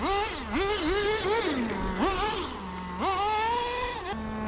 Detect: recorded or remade recorded